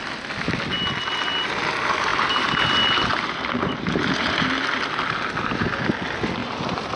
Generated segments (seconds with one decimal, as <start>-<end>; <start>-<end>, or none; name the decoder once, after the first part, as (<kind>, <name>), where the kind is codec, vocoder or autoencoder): 2.1-4.4 (vocoder, BigVGAN v2); 6.4-7.0